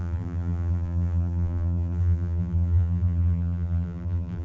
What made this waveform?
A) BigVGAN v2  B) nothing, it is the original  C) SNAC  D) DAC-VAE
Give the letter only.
A